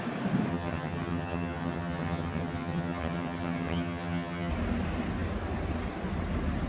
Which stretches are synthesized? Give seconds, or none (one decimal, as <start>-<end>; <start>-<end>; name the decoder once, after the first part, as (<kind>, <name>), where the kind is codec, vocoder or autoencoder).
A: 0.5-4.5 (vocoder, HiFi-GAN)